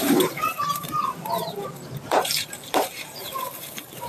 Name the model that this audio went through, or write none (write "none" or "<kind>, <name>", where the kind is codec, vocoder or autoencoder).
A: vocoder, BigVGAN v2